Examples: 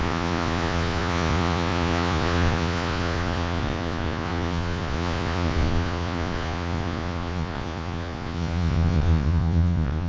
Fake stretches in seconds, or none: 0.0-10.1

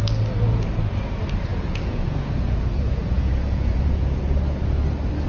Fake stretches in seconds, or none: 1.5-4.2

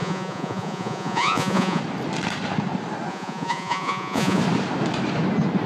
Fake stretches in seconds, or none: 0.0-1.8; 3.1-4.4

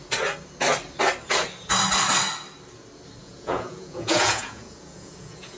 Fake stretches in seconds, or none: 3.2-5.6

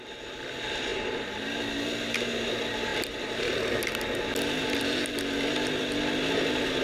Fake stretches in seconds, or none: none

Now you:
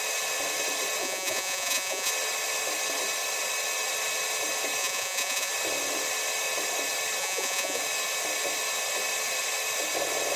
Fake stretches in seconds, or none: 1.0-2.1; 4.8-5.5; 7.2-7.8